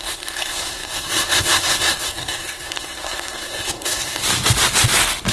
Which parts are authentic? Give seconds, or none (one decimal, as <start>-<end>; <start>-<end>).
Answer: 4.2-5.3